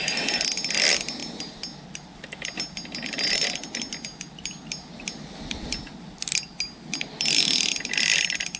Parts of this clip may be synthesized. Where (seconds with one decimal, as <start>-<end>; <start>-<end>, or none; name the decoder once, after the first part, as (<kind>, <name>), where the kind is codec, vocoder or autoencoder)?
none